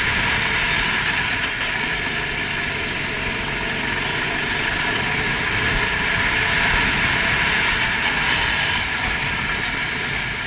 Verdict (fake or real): real